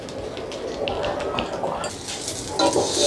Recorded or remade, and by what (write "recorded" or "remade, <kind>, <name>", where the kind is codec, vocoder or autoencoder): recorded